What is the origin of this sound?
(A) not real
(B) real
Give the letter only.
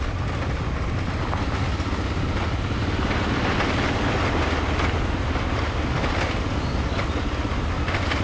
B